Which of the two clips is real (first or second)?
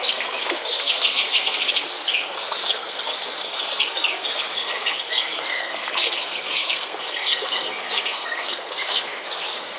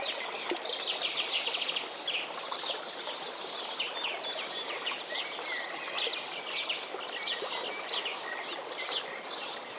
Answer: second